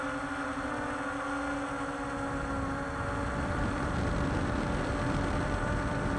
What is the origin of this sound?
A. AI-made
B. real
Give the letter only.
B